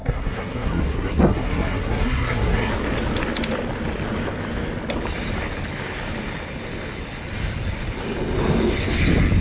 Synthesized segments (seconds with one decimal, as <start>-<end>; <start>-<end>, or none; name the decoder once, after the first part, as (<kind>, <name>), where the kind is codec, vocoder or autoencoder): 0.0-2.7 (codec, SNAC)

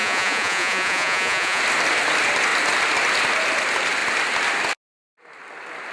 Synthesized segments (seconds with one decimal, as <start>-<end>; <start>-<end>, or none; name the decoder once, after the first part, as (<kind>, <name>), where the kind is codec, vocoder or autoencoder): 0.0-1.6 (vocoder, Vocos)

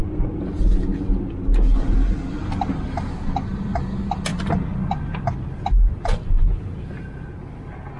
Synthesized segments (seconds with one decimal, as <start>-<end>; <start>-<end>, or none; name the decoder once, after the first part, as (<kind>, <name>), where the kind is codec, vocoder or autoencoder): none

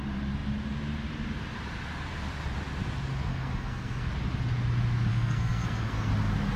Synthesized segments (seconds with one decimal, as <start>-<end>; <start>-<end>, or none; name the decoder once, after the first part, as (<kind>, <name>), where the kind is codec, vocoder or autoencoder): 3.3-4.1 (codec, SNAC); 5.1-6.1